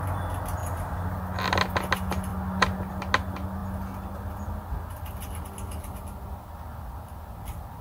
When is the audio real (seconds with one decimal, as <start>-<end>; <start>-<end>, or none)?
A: 0.0-0.6; 1.2-7.8